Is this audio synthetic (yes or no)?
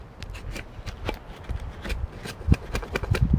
no